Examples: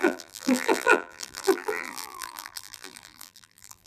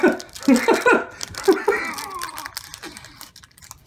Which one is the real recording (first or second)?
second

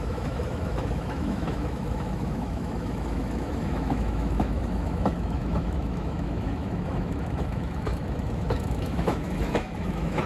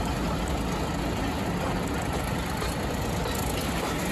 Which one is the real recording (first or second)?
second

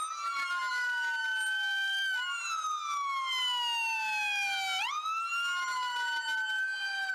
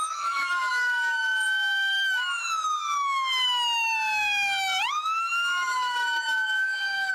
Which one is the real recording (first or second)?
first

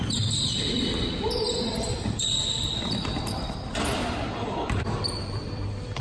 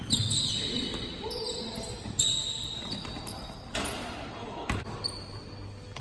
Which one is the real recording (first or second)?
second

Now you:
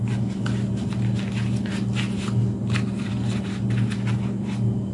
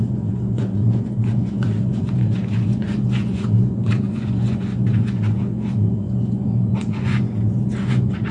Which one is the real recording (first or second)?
first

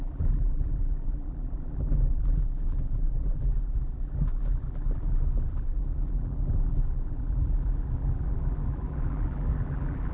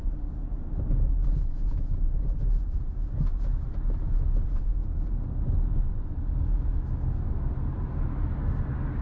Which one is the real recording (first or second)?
second